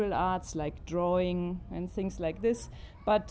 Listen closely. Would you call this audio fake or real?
real